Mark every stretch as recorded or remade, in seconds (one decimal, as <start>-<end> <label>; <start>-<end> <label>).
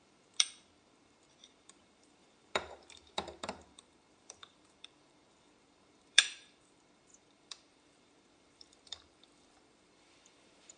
0.0-10.8 remade